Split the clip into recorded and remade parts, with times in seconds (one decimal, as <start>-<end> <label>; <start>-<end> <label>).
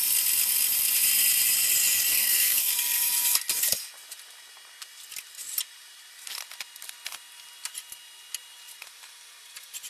0.0-2.1 recorded; 2.1-2.7 remade; 2.7-9.9 recorded